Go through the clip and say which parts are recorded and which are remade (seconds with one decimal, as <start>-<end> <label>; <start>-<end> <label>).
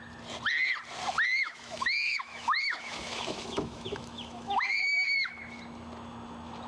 0.0-1.4 recorded; 1.4-5.4 remade; 5.4-6.7 recorded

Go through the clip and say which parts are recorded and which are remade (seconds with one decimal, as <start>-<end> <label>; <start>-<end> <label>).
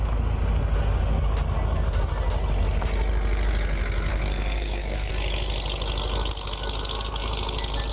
0.0-4.1 recorded; 4.1-5.1 remade; 5.1-7.9 recorded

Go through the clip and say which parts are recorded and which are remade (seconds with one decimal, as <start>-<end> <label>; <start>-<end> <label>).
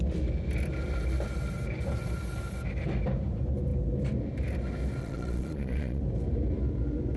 0.0-5.0 recorded; 5.0-6.0 remade; 6.0-7.2 recorded